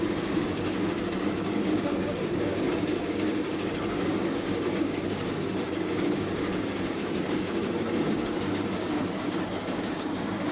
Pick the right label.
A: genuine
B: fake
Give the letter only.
B